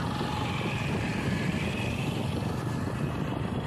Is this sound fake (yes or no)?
no